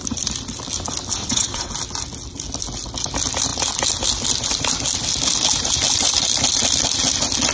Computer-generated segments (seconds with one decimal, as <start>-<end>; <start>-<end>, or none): 1.2-1.7